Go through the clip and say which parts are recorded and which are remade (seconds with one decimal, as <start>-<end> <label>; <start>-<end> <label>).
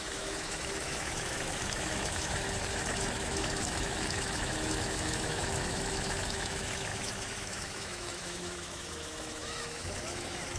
0.0-10.6 remade